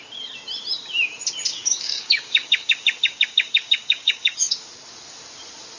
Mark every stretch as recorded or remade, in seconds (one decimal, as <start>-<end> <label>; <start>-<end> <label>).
0.0-1.5 recorded; 1.5-4.7 remade; 4.7-5.8 recorded